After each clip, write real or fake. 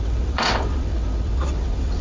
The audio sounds fake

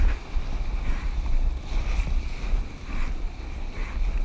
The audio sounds real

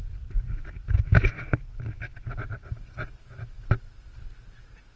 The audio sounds real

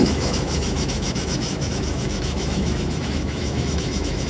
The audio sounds fake